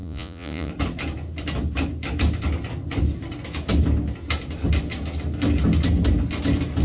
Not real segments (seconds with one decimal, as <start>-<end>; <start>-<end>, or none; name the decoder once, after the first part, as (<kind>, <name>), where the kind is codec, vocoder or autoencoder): 0.0-0.7 (vocoder, Vocos)

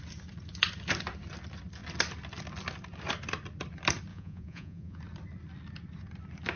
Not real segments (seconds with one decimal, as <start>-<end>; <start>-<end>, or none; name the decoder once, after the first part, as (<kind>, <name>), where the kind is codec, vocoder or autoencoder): 4.1-5.0 (vocoder, Vocos)

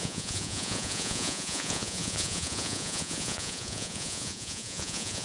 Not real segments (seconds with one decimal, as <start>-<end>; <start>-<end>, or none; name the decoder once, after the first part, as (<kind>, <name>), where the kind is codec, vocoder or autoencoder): 0.0-5.2 (vocoder, Vocos)

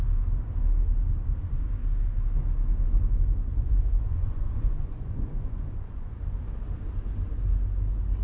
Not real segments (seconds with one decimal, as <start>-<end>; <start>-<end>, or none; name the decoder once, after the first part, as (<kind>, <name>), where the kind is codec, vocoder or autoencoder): 3.5-6.2 (vocoder, Vocos)

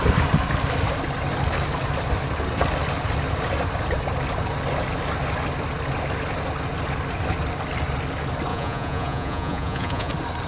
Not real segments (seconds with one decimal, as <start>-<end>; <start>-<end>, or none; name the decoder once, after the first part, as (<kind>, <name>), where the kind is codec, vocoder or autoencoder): 8.5-10.1 (vocoder, Vocos)